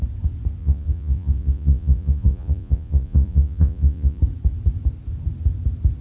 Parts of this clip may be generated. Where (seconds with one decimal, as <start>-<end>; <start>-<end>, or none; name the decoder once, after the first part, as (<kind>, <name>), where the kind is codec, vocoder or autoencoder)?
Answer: 0.6-4.2 (vocoder, Vocos)